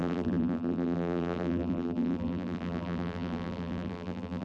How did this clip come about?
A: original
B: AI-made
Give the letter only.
B